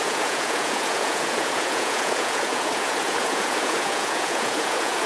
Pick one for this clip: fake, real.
fake